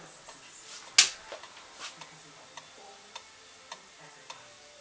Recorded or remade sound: recorded